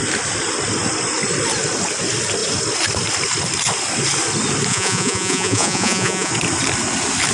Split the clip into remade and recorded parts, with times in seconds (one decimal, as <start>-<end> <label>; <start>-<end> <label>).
0.0-4.7 recorded; 4.7-6.3 remade; 6.3-7.3 recorded